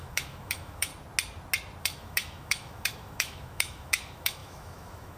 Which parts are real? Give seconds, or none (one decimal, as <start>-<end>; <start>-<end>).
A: 0.9-1.8